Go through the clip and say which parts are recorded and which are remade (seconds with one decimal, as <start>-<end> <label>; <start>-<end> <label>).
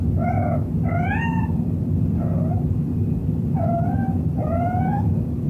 0.0-1.3 recorded; 1.3-2.2 remade; 2.2-3.2 recorded; 3.2-4.8 remade; 4.8-5.5 recorded